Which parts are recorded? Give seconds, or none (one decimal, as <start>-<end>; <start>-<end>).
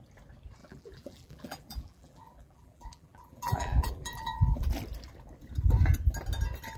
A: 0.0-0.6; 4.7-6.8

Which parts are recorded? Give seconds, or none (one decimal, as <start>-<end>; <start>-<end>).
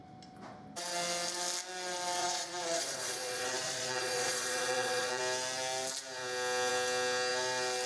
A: 0.0-2.2; 5.2-7.9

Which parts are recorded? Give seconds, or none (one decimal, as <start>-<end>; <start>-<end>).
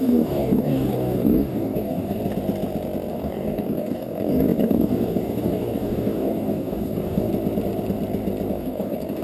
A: 2.2-3.1; 7.3-8.5